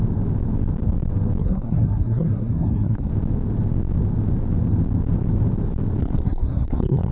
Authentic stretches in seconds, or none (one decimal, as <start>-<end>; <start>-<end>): 0.0-1.4; 3.1-6.0